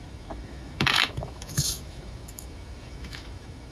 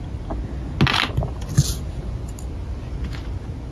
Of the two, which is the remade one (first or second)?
first